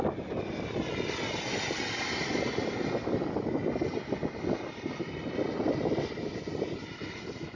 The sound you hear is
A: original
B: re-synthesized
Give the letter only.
A